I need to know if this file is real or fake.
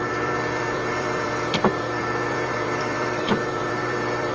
fake